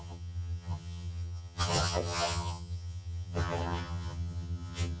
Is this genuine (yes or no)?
no